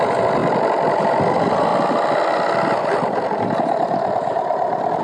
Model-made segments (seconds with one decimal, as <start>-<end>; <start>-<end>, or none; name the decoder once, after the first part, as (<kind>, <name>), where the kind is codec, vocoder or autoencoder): 0.4-1.2 (vocoder, BigVGAN v2); 1.7-5.0